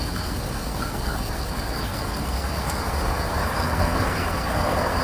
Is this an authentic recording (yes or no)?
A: no